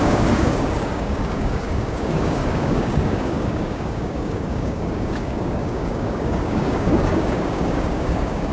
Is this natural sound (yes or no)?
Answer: no